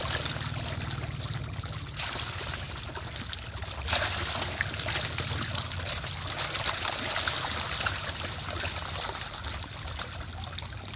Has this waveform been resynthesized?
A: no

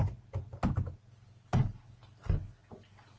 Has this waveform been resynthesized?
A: no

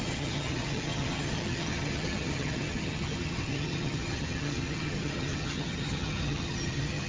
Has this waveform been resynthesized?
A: yes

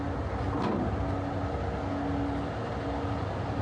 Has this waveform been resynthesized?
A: no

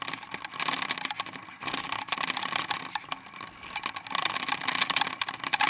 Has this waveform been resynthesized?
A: no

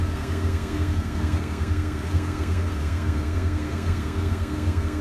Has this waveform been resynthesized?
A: yes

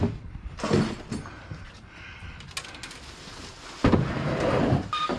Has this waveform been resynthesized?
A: no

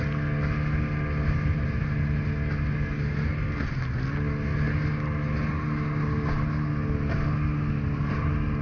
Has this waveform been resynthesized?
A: no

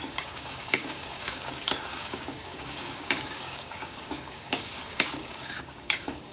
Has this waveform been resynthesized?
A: yes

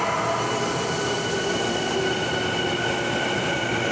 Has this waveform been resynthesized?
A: no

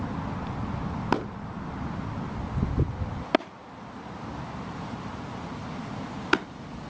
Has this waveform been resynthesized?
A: no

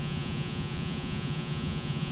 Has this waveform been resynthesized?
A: yes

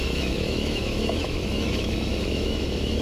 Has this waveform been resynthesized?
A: yes